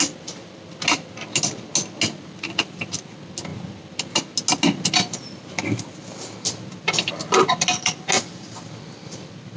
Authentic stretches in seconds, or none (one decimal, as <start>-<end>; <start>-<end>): 0.0-9.6